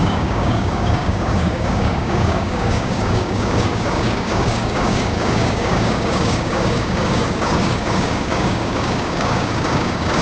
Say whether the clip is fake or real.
fake